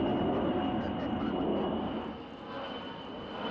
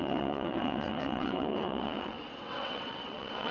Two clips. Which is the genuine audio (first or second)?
first